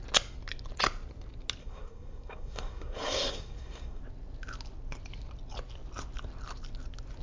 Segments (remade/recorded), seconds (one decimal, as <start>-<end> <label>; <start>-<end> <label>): 0.0-1.6 recorded; 1.6-4.0 remade; 4.0-7.2 recorded